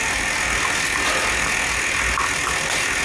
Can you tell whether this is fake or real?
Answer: real